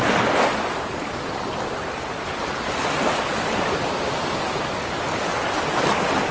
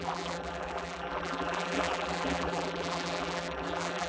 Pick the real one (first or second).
first